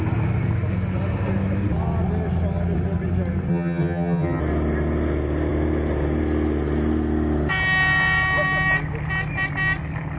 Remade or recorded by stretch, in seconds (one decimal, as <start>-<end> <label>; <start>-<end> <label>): 0.0-3.5 recorded; 3.5-4.4 remade; 4.4-10.2 recorded

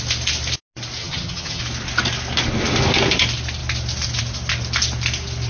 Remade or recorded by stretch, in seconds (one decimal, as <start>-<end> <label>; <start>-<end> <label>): 0.0-1.0 recorded; 1.0-1.6 remade; 1.6-5.5 recorded

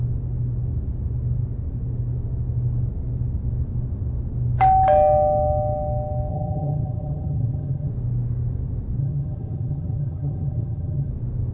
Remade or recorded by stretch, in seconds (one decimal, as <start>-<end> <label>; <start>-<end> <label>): 0.0-6.3 recorded; 6.3-7.9 remade; 7.9-9.0 recorded; 9.0-11.1 remade; 11.1-11.5 recorded

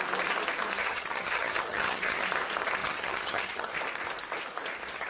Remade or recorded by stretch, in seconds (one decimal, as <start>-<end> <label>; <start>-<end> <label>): 0.0-0.8 recorded; 0.8-2.2 remade; 2.2-2.8 recorded; 2.8-3.8 remade; 3.8-5.1 recorded

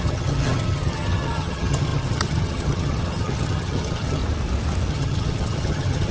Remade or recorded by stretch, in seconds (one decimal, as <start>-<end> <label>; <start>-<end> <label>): 0.0-4.2 remade; 4.2-4.9 recorded; 4.9-6.1 remade

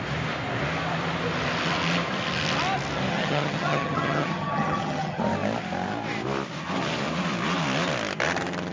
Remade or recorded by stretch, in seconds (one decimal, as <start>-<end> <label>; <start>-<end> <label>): 0.0-3.1 recorded; 3.1-5.2 remade; 5.2-8.7 recorded